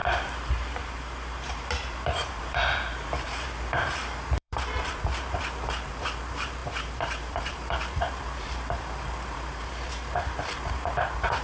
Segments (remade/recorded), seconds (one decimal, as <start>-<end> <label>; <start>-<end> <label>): 0.0-11.4 remade